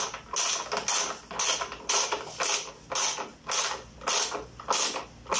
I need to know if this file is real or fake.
real